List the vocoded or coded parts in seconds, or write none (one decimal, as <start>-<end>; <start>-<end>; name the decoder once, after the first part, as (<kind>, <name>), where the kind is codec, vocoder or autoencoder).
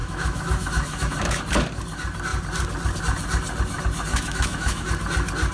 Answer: 0.0-1.4 (autoencoder, DAC-VAE); 4.1-4.9